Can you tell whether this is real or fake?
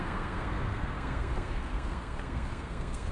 fake